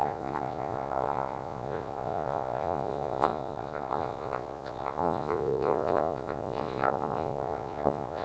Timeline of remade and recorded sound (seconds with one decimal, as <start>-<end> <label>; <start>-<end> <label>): 0.0-8.2 remade